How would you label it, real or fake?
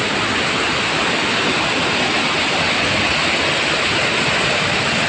real